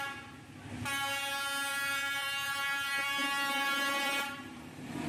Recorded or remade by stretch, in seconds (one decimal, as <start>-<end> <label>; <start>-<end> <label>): 0.0-1.7 recorded; 1.7-5.1 remade